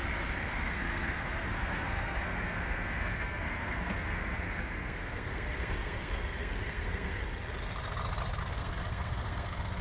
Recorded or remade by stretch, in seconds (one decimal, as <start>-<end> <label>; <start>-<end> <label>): 0.0-0.5 recorded; 0.5-7.2 remade; 7.2-8.5 recorded; 8.5-9.8 remade